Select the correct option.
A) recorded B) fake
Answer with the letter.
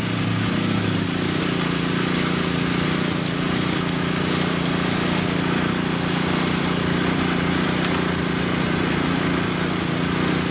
A